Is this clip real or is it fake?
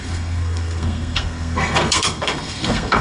fake